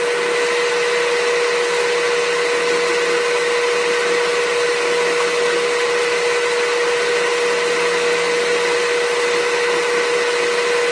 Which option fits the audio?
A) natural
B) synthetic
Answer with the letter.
A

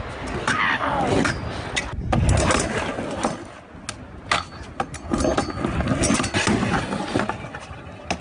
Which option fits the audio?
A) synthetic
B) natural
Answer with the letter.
B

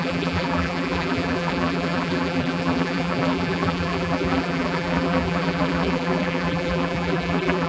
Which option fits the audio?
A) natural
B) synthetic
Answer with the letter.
B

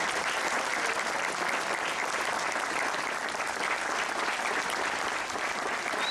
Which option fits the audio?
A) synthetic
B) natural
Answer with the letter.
B